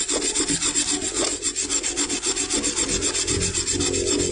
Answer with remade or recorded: recorded